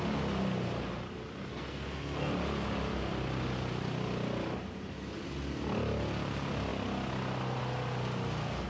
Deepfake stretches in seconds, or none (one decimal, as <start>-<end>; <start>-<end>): 1.5-2.3